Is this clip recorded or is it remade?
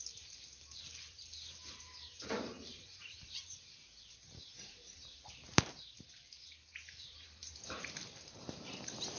remade